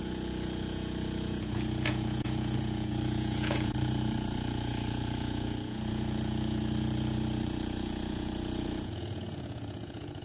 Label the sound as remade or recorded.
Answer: remade